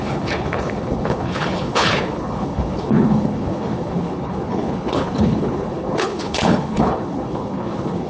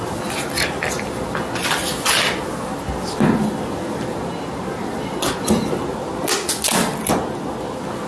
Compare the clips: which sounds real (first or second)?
second